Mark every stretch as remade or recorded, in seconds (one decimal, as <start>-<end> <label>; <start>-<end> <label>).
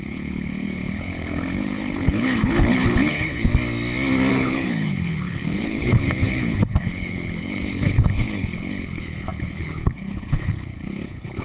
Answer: 0.0-3.5 remade; 3.5-4.3 recorded; 4.3-11.4 remade